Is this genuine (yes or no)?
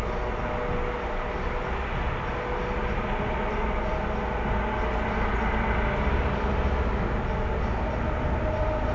yes